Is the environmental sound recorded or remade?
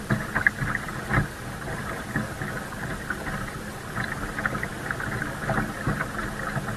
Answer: recorded